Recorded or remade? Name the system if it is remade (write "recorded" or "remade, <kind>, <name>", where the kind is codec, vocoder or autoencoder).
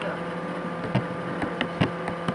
recorded